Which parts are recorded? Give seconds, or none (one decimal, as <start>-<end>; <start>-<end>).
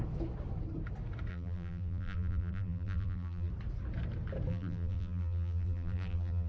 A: 0.0-1.3; 3.5-4.5